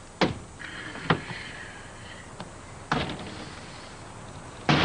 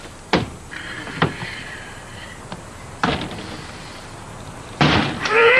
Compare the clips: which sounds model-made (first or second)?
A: second